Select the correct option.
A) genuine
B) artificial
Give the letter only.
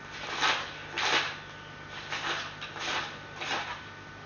A